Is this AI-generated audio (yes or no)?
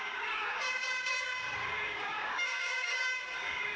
yes